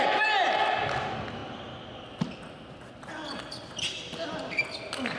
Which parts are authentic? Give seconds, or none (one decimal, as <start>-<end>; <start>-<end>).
0.0-5.2